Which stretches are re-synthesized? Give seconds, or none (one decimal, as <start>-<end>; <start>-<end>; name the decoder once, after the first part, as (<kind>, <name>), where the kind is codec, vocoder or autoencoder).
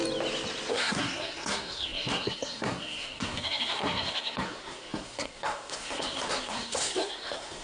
0.7-7.6 (codec, SNAC)